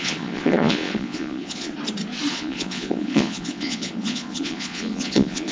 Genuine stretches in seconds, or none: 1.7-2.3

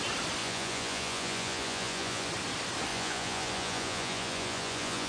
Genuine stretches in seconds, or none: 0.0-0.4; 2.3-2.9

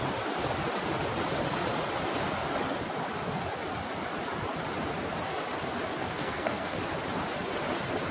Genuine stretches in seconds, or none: 0.0-6.0; 6.8-8.1

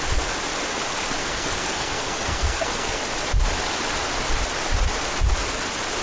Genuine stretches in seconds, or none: 0.0-1.2; 3.0-6.0

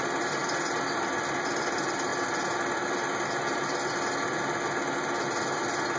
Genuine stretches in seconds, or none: 0.0-6.0

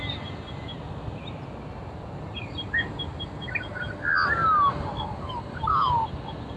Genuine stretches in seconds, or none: 0.0-6.6

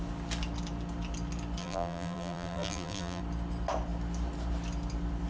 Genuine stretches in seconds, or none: 0.0-1.6; 3.2-5.3